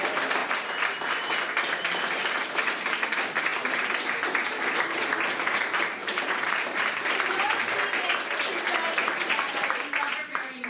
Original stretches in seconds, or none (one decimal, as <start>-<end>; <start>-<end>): 0.0-0.4; 1.1-6.0; 7.7-9.0